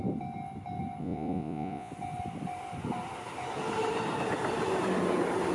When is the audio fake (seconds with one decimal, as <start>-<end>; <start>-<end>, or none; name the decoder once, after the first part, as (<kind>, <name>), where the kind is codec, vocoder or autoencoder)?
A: 1.0-1.9 (vocoder, Vocos)